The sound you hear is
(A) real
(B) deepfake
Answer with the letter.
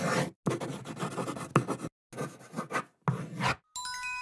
A